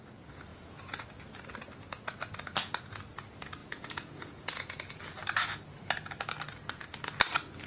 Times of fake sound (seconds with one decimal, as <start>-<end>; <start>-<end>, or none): 0.5-1.0; 3.6-5.0